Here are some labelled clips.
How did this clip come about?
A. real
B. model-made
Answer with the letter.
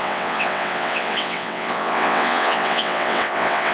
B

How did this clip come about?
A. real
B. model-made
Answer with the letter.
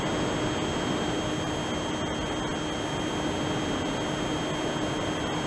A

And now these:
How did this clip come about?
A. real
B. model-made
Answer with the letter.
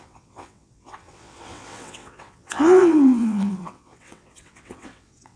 B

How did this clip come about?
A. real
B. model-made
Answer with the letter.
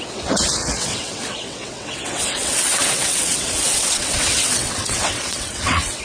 B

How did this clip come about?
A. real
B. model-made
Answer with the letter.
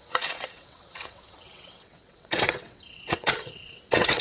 B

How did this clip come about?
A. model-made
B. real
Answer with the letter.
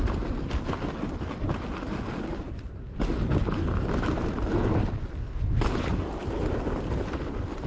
B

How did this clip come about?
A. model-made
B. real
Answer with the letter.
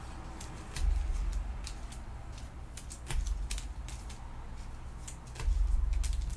B